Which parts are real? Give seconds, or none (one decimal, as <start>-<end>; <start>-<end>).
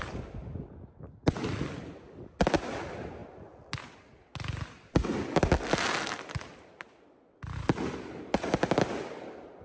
0.0-9.6